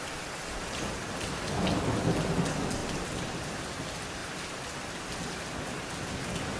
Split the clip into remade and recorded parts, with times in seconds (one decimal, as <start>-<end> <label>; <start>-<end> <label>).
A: 0.0-2.8 recorded; 2.8-3.5 remade; 3.5-6.6 recorded